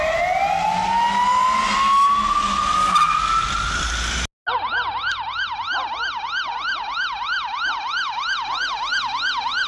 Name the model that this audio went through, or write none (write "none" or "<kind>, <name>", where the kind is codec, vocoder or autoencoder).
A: none